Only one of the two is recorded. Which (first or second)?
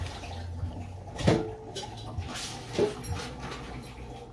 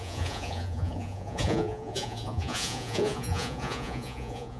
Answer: first